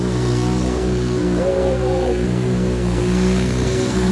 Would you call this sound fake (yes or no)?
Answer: yes